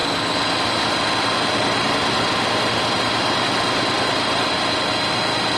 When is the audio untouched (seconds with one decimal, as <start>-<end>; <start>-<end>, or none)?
0.0-5.6